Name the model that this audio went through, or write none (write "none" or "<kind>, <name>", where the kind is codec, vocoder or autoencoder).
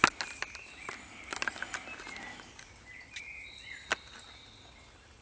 none